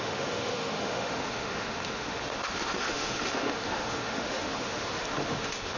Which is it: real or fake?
fake